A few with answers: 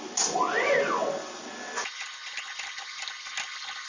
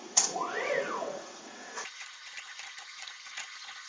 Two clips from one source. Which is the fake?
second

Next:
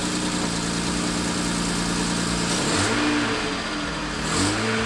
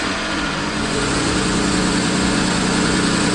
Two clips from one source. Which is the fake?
second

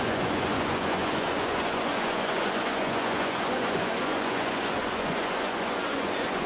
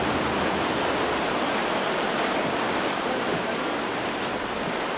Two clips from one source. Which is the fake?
first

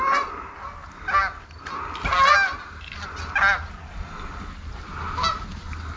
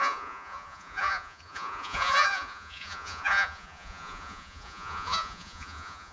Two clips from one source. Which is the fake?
second